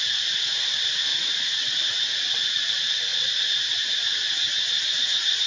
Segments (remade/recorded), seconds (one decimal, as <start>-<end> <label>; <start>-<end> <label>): 0.0-1.1 recorded; 1.1-1.8 remade; 1.8-5.5 recorded